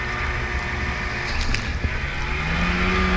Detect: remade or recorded recorded